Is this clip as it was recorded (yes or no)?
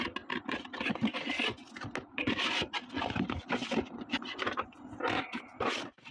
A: yes